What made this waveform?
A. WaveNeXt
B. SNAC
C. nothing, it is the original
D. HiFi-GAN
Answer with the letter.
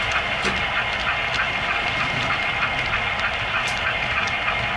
C